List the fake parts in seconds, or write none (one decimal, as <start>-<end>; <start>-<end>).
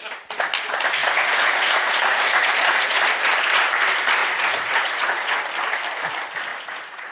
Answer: 1.0-3.0; 4.2-5.4; 6.5-7.1